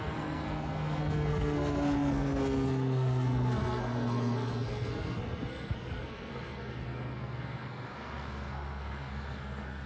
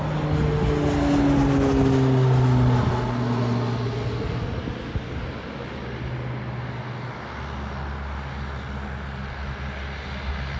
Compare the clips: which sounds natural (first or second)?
second